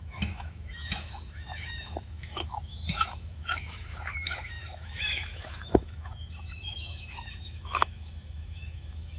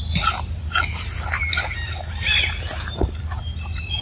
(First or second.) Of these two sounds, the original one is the second